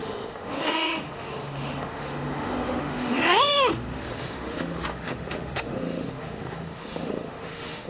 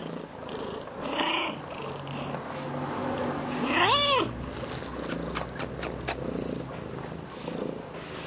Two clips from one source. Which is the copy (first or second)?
first